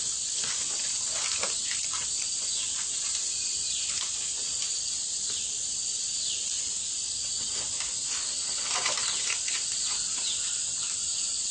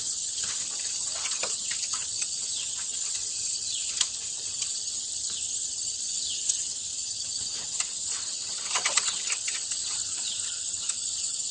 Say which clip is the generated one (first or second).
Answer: second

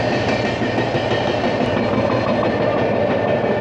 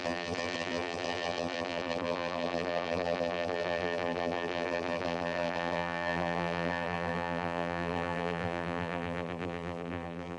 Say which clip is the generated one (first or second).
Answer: second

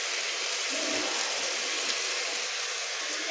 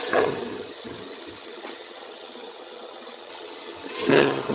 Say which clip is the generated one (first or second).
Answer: second